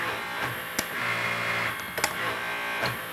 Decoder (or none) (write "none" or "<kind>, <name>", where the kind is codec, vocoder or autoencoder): none